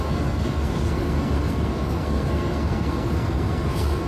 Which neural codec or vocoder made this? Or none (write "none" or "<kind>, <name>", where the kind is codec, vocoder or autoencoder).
codec, SNAC